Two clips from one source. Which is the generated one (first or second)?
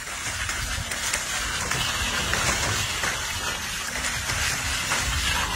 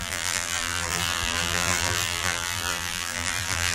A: second